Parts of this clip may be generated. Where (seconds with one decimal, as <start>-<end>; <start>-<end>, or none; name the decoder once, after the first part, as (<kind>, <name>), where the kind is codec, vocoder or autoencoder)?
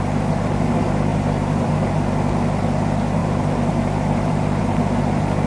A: 1.1-1.9 (vocoder, BigVGAN v2); 3.2-4.6